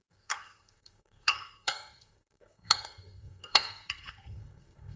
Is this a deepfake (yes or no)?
yes